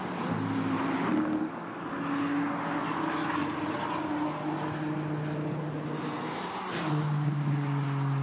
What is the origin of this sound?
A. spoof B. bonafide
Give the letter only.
B